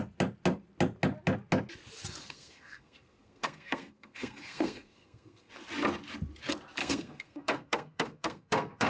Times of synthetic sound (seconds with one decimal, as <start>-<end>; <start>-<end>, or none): 2.2-5.5; 6.8-8.9